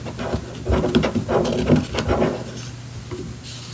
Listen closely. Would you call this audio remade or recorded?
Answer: recorded